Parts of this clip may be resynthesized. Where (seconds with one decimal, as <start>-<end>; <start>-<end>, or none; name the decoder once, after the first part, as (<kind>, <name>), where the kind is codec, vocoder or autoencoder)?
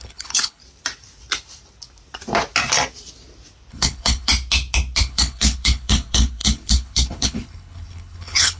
0.0-0.6 (codec, HILCodec); 3.7-4.3; 5.0-8.6